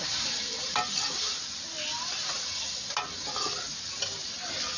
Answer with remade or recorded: recorded